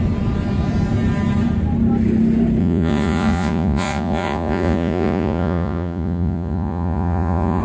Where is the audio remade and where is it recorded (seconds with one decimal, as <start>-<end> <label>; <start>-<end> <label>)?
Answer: 0.0-2.6 recorded; 2.6-7.6 remade